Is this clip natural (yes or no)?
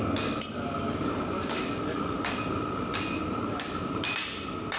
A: no